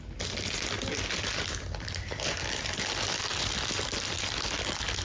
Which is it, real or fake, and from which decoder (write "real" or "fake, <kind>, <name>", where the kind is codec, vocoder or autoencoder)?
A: real